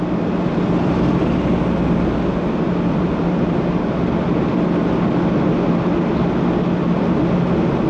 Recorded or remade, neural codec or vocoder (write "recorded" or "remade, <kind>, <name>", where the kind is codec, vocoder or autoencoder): recorded